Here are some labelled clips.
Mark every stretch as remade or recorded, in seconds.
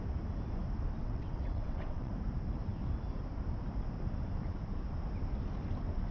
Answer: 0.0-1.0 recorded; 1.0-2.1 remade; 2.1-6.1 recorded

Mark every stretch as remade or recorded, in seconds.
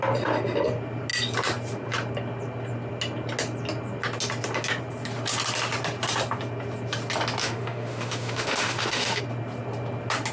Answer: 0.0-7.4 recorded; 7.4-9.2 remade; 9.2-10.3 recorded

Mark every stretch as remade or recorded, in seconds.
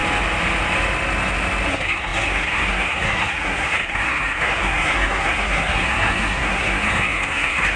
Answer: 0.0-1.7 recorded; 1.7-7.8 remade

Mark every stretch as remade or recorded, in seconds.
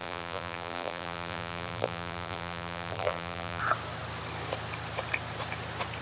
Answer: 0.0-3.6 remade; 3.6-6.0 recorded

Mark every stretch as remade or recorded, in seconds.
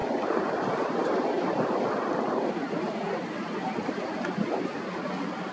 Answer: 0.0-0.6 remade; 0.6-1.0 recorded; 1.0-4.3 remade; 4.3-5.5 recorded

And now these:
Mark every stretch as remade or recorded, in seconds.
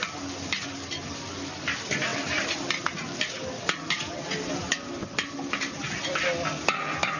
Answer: 0.0-7.2 recorded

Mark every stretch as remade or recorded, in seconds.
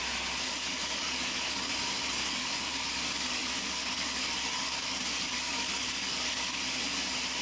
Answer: 0.0-0.5 recorded; 0.5-1.7 remade; 1.7-2.2 recorded; 2.2-6.6 remade; 6.6-7.4 recorded